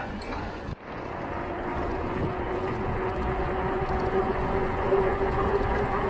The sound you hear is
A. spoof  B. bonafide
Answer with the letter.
A